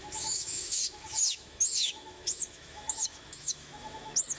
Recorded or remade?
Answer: remade